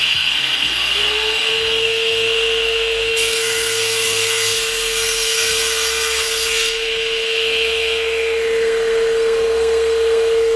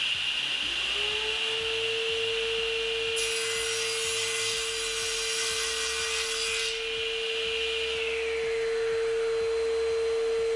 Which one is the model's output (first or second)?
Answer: first